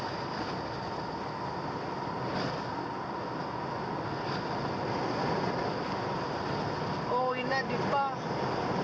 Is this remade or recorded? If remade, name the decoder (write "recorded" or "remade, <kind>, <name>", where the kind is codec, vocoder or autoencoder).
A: recorded